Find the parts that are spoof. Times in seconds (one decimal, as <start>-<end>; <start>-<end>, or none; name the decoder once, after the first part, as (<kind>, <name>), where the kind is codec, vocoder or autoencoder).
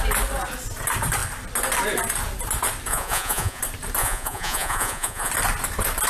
2.9-3.6 (vocoder, Vocos); 4.0-5.3